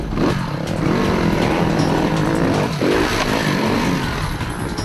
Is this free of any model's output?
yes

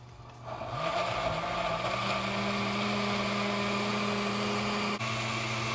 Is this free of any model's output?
yes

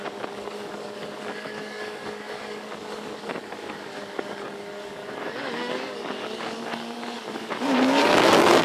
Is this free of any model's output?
no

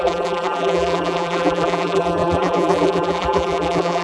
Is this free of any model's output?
no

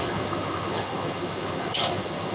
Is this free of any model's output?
no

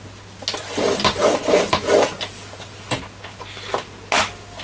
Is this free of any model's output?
yes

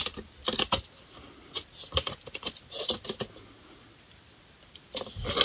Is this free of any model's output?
yes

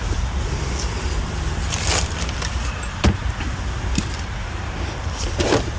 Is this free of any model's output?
no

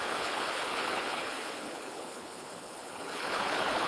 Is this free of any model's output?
no